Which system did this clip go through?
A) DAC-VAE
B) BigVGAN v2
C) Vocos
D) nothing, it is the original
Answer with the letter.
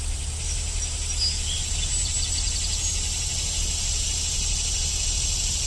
D